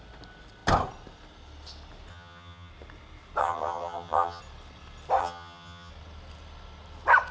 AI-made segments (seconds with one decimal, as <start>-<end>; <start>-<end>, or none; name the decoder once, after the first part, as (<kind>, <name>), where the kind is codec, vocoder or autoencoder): 2.1-2.7 (vocoder, HiFi-GAN); 3.4-4.4; 5.2-5.9